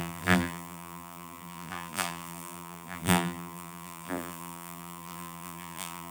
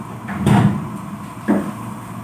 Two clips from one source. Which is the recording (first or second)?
second